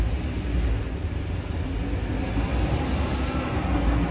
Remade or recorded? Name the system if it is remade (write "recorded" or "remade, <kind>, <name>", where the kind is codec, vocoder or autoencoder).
recorded